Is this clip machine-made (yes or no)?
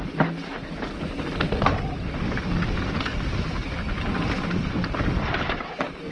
no